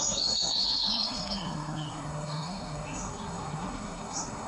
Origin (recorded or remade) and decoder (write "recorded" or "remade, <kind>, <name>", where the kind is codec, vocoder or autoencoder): remade, codec, SNAC